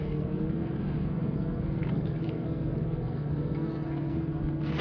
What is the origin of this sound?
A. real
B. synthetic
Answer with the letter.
B